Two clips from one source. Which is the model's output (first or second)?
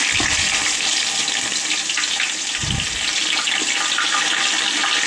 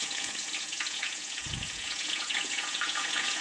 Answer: second